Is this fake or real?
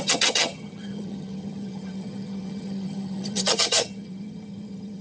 fake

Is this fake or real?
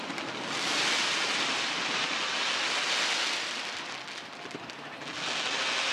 real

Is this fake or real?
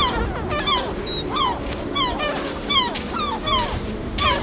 fake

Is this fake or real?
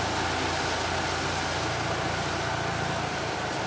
real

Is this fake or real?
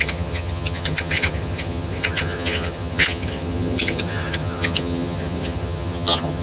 fake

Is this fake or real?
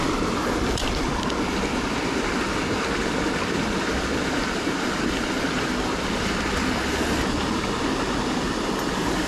real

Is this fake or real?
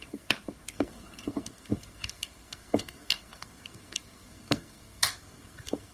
fake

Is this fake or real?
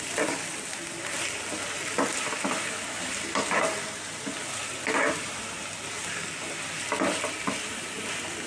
fake